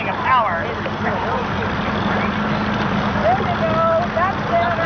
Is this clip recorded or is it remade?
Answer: recorded